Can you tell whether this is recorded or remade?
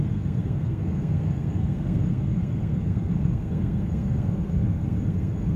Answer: remade